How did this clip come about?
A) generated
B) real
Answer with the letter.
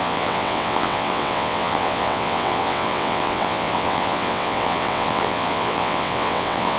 A